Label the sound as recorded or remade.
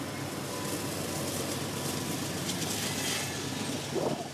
recorded